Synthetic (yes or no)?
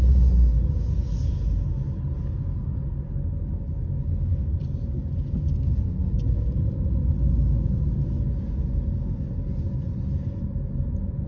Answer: no